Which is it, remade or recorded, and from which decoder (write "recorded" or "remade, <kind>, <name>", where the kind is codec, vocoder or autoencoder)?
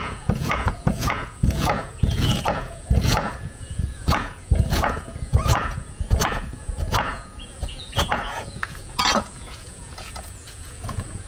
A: remade, vocoder, Vocos